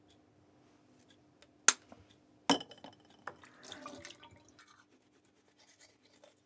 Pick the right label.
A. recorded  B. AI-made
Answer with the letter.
A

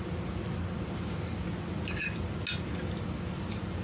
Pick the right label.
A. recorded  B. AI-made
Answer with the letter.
A